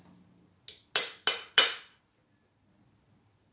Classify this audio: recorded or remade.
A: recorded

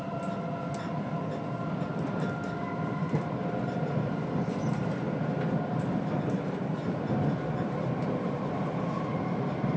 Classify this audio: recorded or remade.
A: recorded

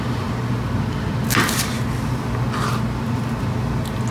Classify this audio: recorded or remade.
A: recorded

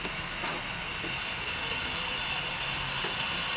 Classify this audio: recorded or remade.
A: recorded